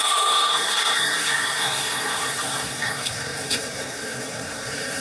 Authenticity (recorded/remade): remade